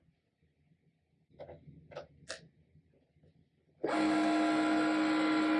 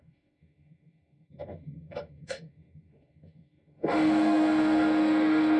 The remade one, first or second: second